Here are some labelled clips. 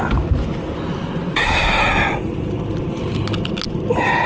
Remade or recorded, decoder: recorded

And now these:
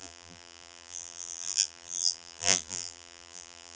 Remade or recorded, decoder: remade, vocoder, BigVGAN v2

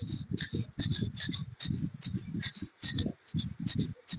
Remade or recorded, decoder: remade, vocoder, BigVGAN v2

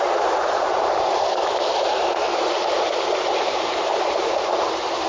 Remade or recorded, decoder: remade, vocoder, BigVGAN v2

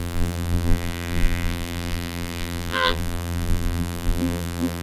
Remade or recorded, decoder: remade, vocoder, BigVGAN v2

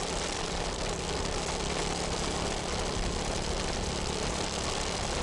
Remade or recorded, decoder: recorded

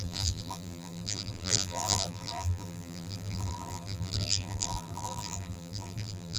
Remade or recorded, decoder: remade, vocoder, BigVGAN v2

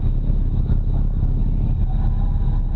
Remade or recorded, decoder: recorded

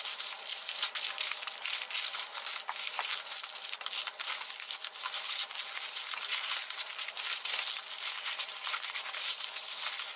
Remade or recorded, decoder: recorded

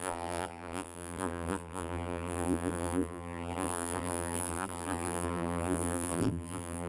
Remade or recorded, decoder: remade, vocoder, BigVGAN v2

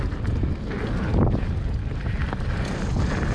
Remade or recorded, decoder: remade, vocoder, BigVGAN v2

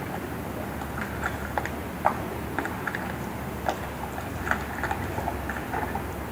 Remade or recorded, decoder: recorded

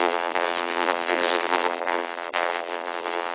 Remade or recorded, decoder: remade, vocoder, BigVGAN v2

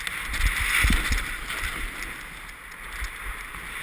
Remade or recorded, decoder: recorded